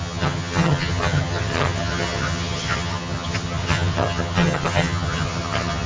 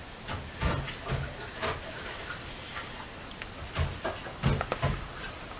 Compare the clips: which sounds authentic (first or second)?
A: second